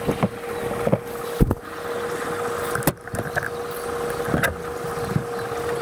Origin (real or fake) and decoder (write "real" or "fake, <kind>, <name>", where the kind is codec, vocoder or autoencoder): real